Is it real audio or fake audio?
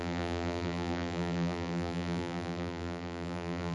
fake